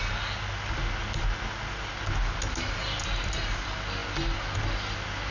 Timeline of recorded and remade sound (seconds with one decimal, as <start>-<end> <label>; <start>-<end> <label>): 0.0-3.2 recorded; 3.2-5.3 remade